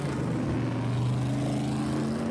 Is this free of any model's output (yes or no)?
yes